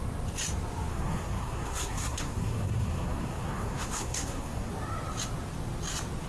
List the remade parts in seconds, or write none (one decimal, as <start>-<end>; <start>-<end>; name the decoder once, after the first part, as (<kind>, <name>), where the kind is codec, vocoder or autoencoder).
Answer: 0.9-4.7 (codec, SNAC)